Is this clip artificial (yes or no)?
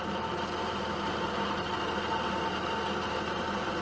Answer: no